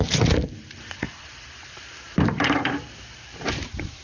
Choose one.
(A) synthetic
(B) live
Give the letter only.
A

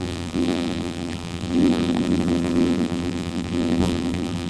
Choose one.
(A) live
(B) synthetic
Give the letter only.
B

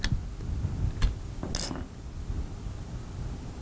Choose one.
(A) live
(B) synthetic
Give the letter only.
A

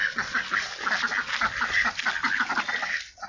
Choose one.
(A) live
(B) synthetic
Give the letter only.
A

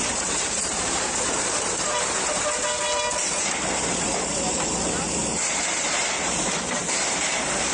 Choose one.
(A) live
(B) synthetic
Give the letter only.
B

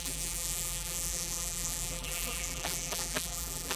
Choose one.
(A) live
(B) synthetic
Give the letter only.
B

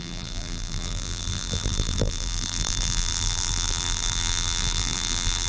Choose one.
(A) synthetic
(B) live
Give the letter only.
A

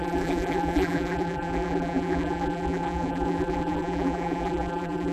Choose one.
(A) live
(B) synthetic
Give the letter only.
B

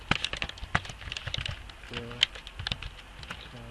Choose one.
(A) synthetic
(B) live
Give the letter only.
B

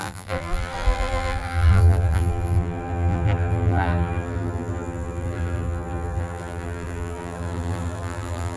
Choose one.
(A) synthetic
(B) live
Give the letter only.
A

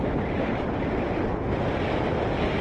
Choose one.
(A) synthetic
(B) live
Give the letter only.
B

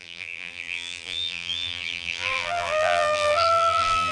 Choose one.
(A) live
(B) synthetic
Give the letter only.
B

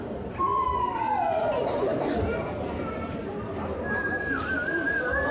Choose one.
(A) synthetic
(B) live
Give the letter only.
A